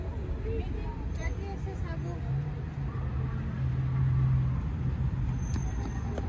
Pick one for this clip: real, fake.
real